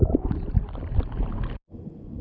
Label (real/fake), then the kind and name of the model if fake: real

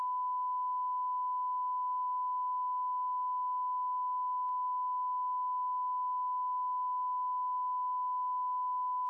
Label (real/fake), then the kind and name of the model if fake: real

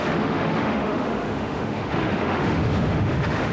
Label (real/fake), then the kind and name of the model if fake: fake, autoencoder, DAC-VAE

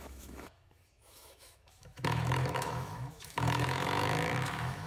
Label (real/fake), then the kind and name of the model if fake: fake, autoencoder, DAC-VAE